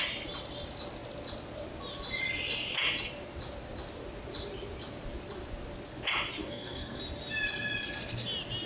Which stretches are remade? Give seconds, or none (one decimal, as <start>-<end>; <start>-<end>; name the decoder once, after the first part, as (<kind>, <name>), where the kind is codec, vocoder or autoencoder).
6.4-7.0 (codec, SNAC)